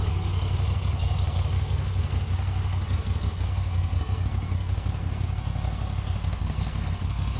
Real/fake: fake